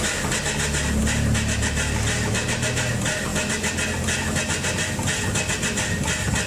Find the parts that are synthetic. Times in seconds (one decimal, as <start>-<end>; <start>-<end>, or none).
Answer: 1.0-2.9